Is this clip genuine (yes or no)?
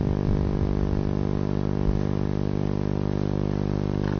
yes